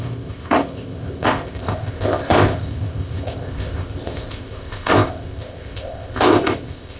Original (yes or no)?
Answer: no